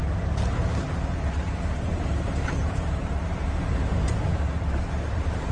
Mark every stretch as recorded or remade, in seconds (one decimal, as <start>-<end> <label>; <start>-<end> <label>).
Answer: 0.0-0.5 recorded; 0.5-1.9 remade; 1.9-2.6 recorded; 2.6-4.3 remade; 4.3-4.8 recorded; 4.8-5.5 remade